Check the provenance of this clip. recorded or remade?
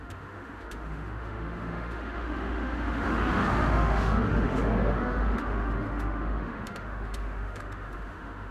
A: remade